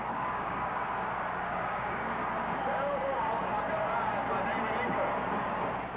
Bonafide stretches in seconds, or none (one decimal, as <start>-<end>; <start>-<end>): 0.8-1.5; 2.2-6.0